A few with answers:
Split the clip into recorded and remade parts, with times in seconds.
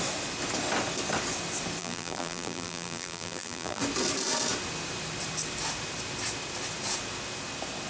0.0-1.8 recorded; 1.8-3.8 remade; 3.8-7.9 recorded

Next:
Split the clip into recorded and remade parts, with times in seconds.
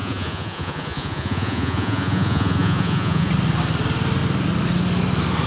0.0-3.3 remade; 3.3-5.5 recorded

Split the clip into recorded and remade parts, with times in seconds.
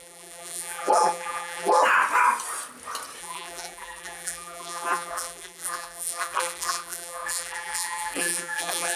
0.0-1.8 remade; 1.8-3.2 recorded; 3.2-9.0 remade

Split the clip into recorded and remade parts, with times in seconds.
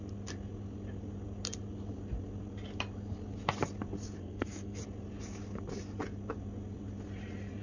0.0-4.2 recorded; 4.2-4.8 remade; 4.8-7.6 recorded